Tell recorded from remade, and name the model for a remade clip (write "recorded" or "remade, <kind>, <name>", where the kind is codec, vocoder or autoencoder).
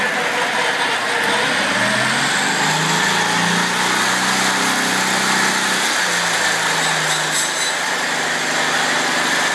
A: recorded